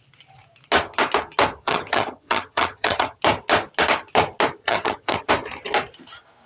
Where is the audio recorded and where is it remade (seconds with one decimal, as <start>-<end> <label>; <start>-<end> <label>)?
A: 0.0-1.6 recorded; 1.6-3.2 remade; 3.2-4.6 recorded; 4.6-5.3 remade; 5.3-6.5 recorded